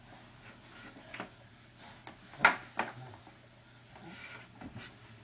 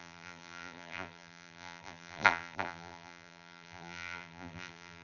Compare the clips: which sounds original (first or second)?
first